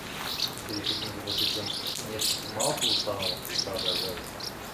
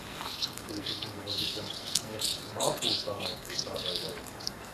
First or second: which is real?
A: first